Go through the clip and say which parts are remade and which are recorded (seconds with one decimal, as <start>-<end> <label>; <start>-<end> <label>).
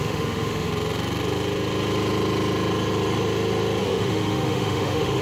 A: 0.0-0.7 remade; 0.7-3.8 recorded; 3.8-5.2 remade